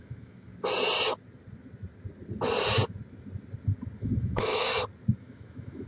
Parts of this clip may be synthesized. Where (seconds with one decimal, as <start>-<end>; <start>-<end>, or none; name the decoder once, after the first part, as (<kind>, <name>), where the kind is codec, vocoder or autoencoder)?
0.0-0.5 (autoencoder, DAC-VAE); 4.0-4.7; 5.2-5.9